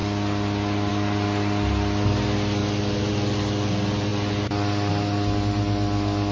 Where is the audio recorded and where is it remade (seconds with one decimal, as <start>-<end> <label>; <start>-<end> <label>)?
0.0-6.3 recorded